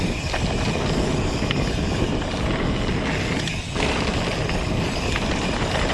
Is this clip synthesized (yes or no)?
no